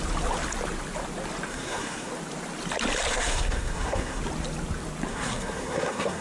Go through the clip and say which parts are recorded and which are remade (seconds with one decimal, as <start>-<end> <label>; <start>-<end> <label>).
0.0-1.5 recorded; 1.5-2.1 remade; 2.1-3.1 recorded; 3.1-4.2 remade; 4.2-5.1 recorded; 5.1-6.2 remade